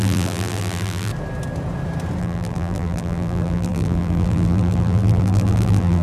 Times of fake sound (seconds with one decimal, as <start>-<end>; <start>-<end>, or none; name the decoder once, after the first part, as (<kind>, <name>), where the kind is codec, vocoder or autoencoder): 0.0-1.1 (vocoder, BigVGAN v2); 2.2-6.0